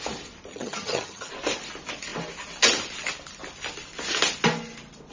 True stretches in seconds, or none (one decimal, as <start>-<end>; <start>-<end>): 0.0-0.5; 1.3-5.1